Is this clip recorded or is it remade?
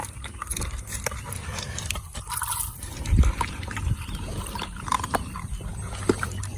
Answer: remade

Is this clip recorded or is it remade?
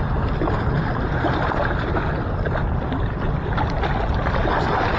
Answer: recorded